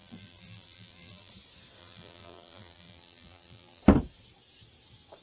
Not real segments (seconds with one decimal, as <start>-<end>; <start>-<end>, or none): 0.0-1.3; 1.8-3.8